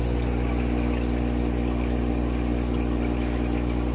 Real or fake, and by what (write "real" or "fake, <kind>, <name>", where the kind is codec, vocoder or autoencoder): real